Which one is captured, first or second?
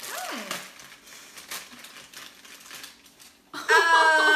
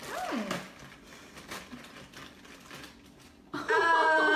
first